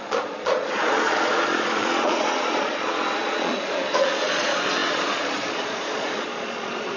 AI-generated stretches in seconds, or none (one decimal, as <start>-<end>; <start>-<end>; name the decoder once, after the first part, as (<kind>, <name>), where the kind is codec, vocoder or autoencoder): 0.0-7.0 (vocoder, Vocos)